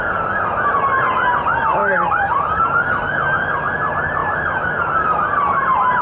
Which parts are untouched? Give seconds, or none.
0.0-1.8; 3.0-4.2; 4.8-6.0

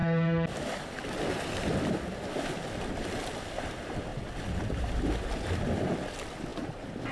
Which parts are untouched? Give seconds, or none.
0.9-4.1; 5.6-6.5